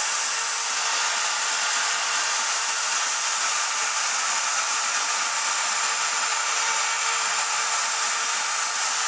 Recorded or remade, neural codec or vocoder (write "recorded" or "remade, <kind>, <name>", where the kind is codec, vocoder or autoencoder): recorded